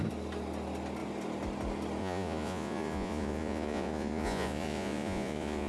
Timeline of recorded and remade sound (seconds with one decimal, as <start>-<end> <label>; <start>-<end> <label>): 0.0-2.0 recorded; 2.0-5.7 remade